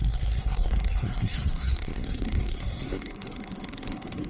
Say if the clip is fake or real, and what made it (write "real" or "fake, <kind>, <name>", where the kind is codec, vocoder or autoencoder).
fake, codec, SNAC